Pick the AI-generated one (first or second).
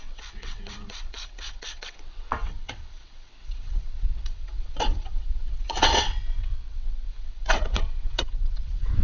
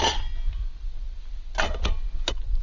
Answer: first